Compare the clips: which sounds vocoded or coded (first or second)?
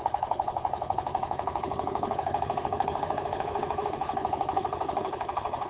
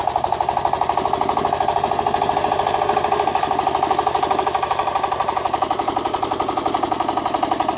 first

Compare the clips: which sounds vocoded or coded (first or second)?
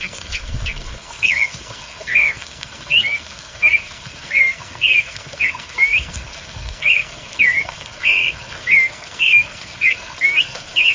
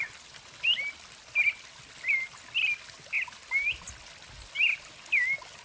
first